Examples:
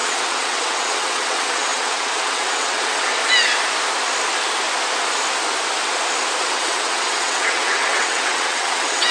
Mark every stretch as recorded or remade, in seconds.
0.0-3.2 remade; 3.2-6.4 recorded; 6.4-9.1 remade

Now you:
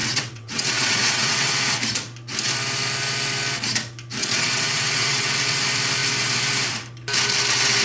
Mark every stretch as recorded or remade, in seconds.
0.0-1.5 remade; 1.5-4.2 recorded; 4.2-5.3 remade; 5.3-7.8 recorded

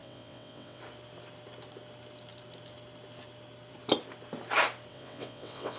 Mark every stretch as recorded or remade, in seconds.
0.0-0.8 remade; 0.8-4.9 recorded; 4.9-5.8 remade

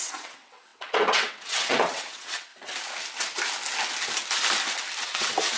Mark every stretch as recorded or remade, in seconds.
0.0-2.5 remade; 2.5-5.0 recorded; 5.0-5.6 remade

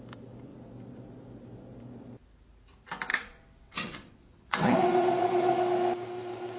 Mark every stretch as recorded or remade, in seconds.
0.0-3.1 recorded; 3.1-5.6 remade; 5.6-6.6 recorded

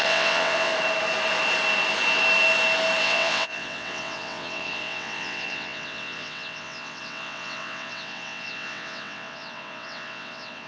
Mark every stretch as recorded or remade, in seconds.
0.0-0.7 remade; 0.7-3.0 recorded; 3.0-10.7 remade

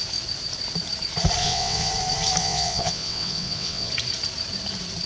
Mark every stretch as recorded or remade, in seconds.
0.0-1.4 recorded; 1.4-1.9 remade; 1.9-2.4 recorded; 2.4-3.9 remade; 3.9-5.1 recorded

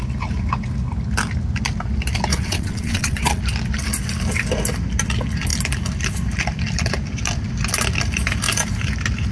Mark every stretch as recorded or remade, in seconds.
0.0-2.3 recorded; 2.3-3.4 remade; 3.4-9.3 recorded